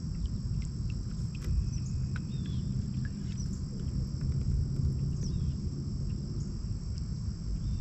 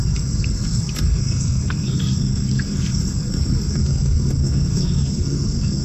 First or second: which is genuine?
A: first